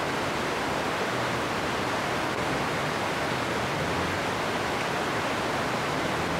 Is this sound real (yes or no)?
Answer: yes